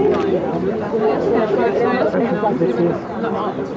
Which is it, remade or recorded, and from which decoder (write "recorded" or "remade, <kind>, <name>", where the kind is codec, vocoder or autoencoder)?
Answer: recorded